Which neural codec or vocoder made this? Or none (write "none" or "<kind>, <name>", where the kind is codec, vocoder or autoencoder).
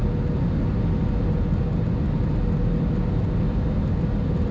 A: none